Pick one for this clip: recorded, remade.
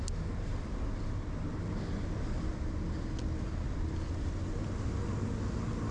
recorded